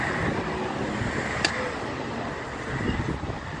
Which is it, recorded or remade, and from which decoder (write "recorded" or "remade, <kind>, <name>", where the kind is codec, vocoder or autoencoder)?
recorded